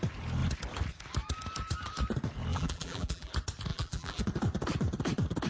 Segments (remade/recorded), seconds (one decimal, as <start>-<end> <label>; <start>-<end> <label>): 0.0-2.5 recorded; 2.5-3.3 remade; 3.3-3.7 recorded; 3.7-4.2 remade; 4.2-5.5 recorded